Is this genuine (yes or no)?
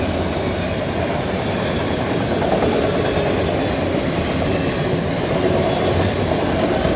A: yes